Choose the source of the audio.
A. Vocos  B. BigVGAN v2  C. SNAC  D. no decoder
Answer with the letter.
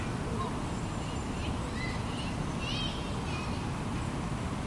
D